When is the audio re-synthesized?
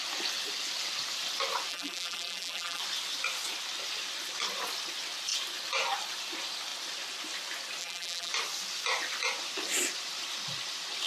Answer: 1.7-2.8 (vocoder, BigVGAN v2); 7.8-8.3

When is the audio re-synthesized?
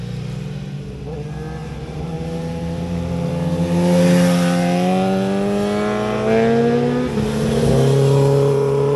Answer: 1.6-3.3 (vocoder, BigVGAN v2)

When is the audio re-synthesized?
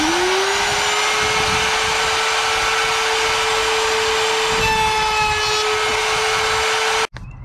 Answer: none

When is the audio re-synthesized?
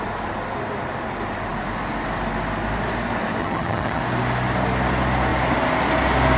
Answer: 3.4-4.0 (vocoder, HiFi-GAN)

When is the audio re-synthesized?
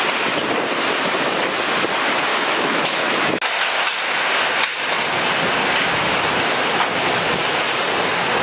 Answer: 2.3-3.3 (autoencoder, DAC-VAE)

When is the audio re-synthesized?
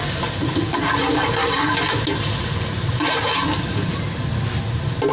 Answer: none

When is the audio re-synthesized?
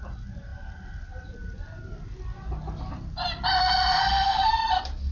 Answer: 4.0-4.5 (codec, SNAC)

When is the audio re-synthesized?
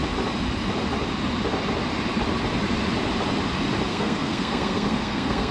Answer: 3.9-5.5 (codec, SNAC)